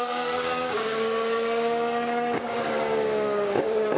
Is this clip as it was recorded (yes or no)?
no